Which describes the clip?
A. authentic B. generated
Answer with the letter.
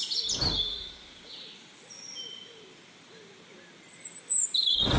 A